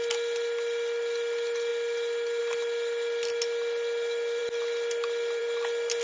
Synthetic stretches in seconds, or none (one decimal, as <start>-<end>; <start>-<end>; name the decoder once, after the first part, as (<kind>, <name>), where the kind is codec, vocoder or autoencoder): none